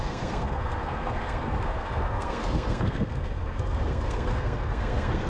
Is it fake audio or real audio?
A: fake